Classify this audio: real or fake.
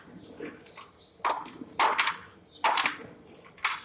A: real